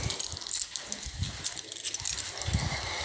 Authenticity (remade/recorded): recorded